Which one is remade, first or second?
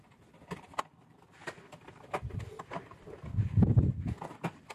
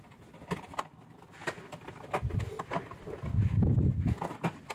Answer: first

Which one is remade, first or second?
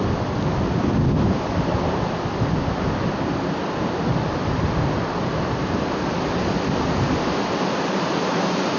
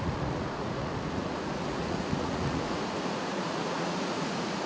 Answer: second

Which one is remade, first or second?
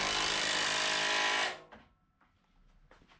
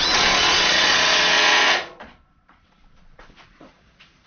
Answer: second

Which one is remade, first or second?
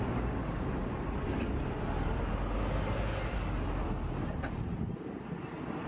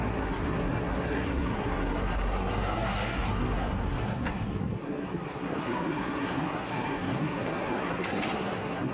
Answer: second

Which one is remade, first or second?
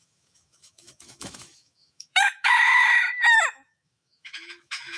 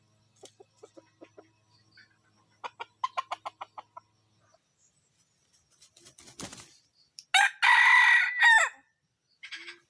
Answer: first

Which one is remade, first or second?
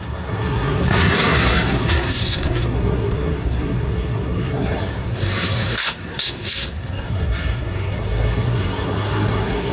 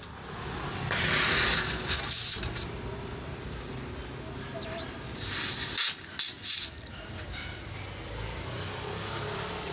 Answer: first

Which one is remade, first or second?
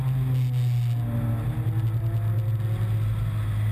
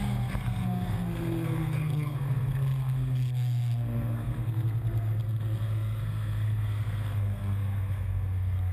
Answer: second